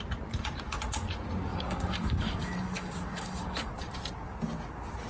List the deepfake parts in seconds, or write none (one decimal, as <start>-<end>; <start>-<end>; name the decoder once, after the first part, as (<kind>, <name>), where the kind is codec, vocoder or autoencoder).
1.5-3.7 (codec, DAC)

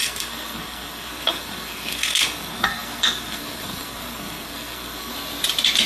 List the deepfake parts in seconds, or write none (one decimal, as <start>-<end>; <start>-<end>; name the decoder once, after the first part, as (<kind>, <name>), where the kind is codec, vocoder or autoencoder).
0.0-5.1 (codec, SNAC)

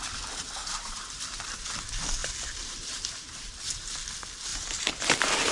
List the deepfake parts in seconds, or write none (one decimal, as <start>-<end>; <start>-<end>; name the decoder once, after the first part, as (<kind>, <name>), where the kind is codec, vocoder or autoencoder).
0.6-1.2 (vocoder, BigVGAN v2); 2.2-3.6; 4.5-5.5